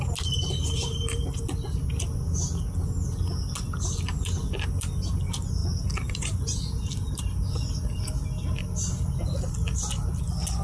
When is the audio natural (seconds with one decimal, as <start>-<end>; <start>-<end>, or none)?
0.0-5.6; 7.3-10.6